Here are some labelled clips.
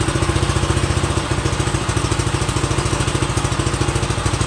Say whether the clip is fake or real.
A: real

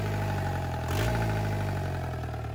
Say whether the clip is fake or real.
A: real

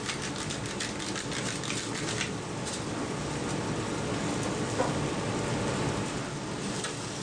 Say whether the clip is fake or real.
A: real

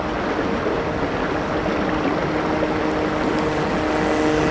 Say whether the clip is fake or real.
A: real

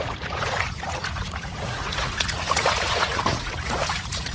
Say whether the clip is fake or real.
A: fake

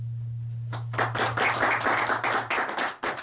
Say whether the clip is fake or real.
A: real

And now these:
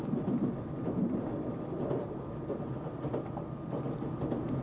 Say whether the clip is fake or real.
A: real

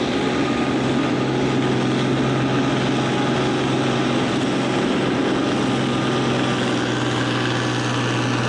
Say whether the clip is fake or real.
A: real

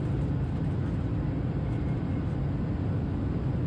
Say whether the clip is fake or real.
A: real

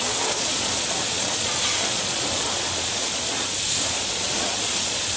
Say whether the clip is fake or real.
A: fake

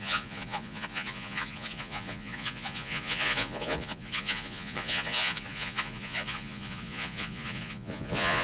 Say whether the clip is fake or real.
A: fake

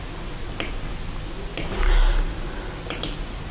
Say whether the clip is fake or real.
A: real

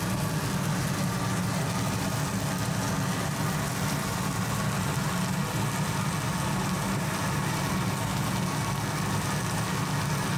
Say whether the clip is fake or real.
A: real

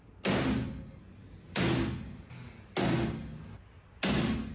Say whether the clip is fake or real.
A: real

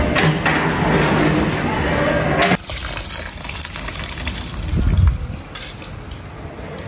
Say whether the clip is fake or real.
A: real